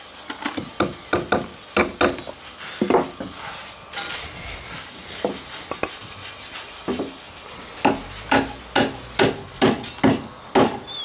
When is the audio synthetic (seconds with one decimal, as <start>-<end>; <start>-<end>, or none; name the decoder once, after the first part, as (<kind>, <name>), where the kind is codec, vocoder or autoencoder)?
none